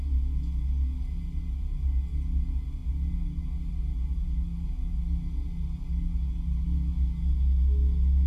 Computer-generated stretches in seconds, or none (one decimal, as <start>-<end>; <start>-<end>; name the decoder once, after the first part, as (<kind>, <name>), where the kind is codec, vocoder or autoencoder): none